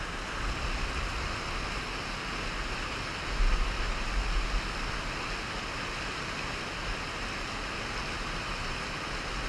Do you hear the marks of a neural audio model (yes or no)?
no